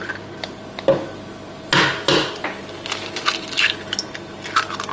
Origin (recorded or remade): recorded